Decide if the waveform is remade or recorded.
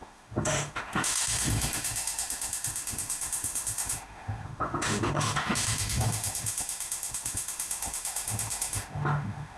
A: remade